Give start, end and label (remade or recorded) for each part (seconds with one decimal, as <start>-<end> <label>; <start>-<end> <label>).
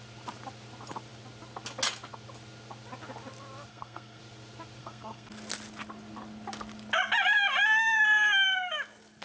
0.0-3.7 recorded; 3.7-4.2 remade; 4.2-4.8 recorded; 4.8-5.3 remade; 5.3-9.2 recorded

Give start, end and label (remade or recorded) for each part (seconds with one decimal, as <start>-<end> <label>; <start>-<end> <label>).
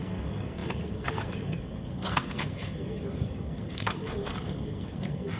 0.0-5.4 remade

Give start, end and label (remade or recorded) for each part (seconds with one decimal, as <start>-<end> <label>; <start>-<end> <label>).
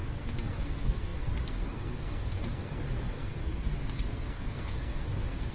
0.0-5.5 remade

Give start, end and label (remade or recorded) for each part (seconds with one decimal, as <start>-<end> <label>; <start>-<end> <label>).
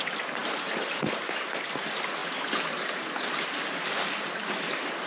0.0-5.1 recorded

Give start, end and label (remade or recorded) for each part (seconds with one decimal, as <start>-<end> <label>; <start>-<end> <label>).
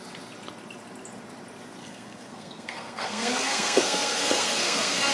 0.0-1.8 recorded; 1.8-5.1 remade